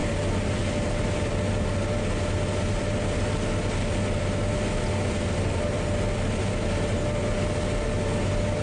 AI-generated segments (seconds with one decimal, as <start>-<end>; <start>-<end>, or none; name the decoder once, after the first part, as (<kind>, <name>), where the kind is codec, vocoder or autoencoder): none